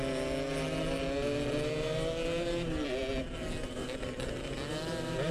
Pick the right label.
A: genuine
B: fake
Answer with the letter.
A